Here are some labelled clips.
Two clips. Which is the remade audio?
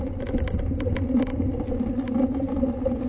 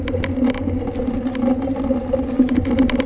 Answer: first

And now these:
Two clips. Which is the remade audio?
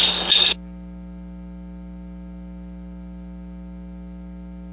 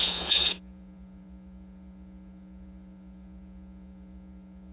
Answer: second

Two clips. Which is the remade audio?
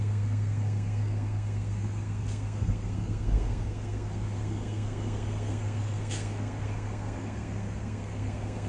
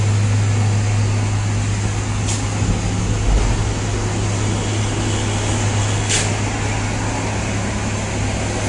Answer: first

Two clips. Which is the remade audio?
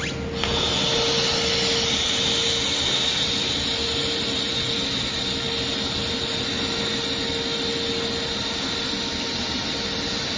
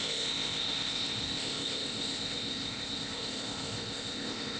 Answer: second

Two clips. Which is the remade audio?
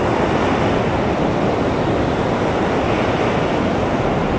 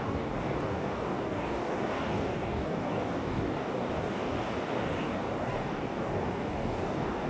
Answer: second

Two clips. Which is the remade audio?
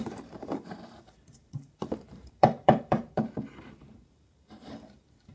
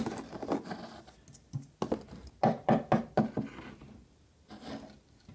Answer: first